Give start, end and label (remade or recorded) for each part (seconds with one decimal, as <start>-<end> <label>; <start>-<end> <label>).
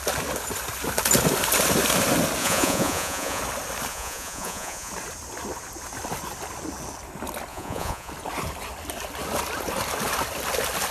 0.0-2.4 recorded; 2.4-3.4 remade; 3.4-3.9 recorded; 3.9-4.9 remade; 4.9-7.5 recorded; 7.5-8.1 remade; 8.1-10.9 recorded